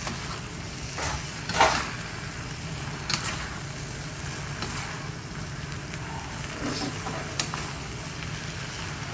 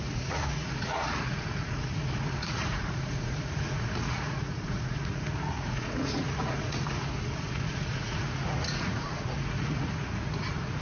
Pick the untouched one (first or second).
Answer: first